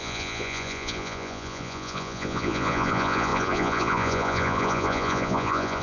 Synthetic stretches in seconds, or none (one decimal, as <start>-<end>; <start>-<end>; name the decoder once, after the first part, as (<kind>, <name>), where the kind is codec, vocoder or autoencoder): 0.0-5.8 (vocoder, Vocos)